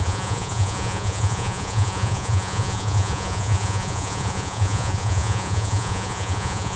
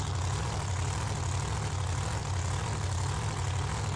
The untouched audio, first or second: second